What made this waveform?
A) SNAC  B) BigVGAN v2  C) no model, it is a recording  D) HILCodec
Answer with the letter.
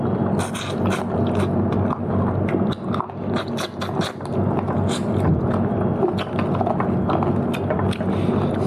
C